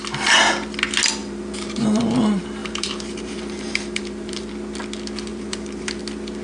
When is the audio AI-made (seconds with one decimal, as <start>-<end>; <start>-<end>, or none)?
1.2-1.8; 2.6-4.5; 5.3-6.0